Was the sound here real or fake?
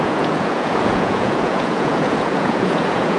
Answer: fake